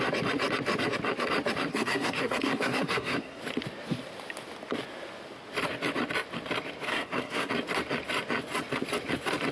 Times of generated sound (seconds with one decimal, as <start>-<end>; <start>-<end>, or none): 1.7-3.4; 6.9-7.5